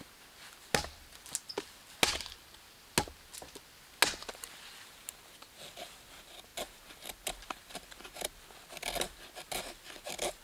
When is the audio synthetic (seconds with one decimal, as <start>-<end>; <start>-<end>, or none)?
none